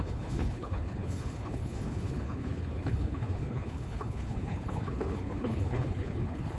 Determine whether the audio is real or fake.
fake